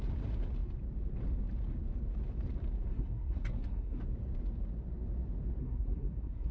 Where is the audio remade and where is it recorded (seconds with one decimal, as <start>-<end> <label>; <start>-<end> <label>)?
0.0-2.9 recorded; 2.9-4.0 remade; 4.0-5.6 recorded; 5.6-6.5 remade